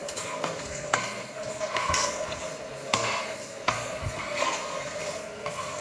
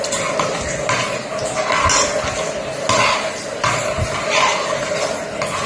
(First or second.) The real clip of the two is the second